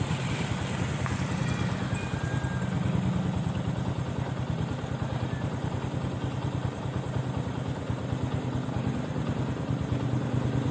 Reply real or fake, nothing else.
real